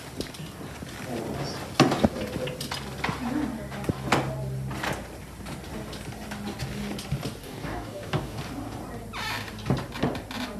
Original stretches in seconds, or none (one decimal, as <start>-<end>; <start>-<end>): 0.0-7.4; 8.4-10.6